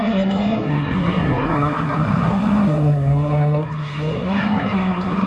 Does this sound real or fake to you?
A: fake